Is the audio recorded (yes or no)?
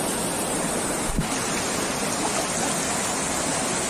yes